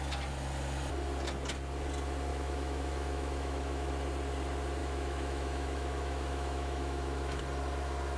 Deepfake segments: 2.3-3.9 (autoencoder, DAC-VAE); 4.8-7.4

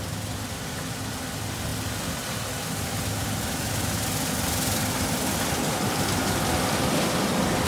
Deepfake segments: none

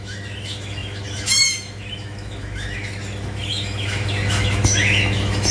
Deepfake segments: 0.0-5.5 (autoencoder, DAC-VAE)

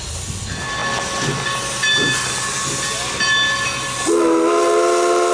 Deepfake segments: none

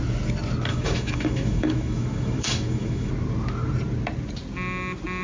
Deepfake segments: 0.7-3.1 (autoencoder, DAC-VAE)